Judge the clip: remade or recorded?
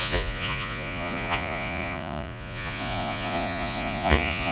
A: remade